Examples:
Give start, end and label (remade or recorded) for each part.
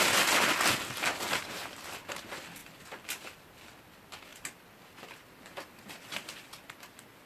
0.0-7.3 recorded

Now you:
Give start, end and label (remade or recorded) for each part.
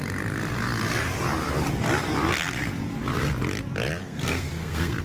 0.0-4.0 recorded; 4.0-5.0 remade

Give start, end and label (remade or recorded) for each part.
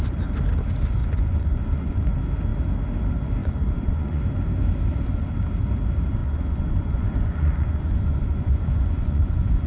0.0-1.0 recorded; 1.0-2.1 remade; 2.1-3.4 recorded; 3.4-4.2 remade; 4.2-6.2 recorded; 6.2-9.7 remade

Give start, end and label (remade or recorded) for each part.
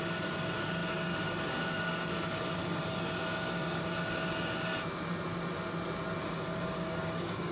0.0-4.7 remade; 4.7-6.2 recorded; 6.2-7.5 remade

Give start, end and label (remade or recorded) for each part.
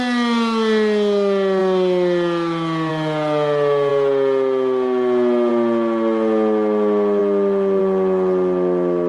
0.0-9.1 recorded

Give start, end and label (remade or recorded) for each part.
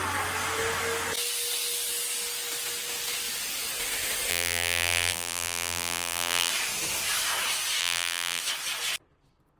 0.0-4.3 recorded; 4.3-6.5 remade; 6.5-7.8 recorded; 7.8-8.4 remade; 8.4-9.6 recorded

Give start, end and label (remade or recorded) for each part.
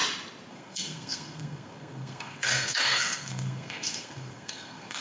0.0-0.5 recorded; 0.5-5.0 remade